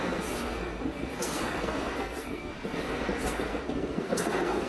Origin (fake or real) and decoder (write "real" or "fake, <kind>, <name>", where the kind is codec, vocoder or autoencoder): fake, codec, SNAC